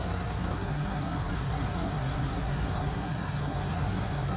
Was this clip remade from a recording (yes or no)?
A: yes